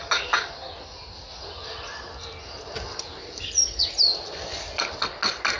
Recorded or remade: recorded